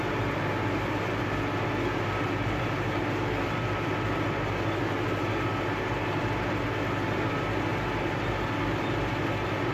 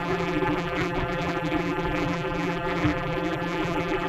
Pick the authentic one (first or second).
first